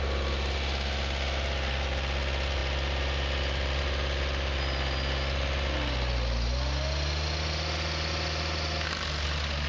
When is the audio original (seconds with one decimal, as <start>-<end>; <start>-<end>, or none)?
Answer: 0.0-9.7